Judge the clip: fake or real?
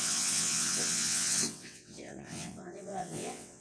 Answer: fake